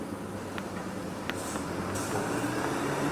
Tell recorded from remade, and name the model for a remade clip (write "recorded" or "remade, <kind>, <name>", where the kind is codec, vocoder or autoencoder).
recorded